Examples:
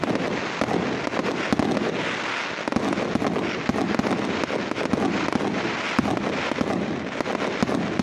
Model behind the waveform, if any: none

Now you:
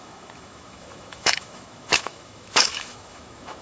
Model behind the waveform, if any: autoencoder, DAC-VAE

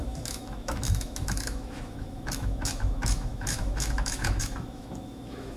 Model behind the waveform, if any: autoencoder, DAC-VAE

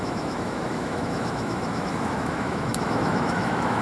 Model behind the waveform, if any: autoencoder, DAC-VAE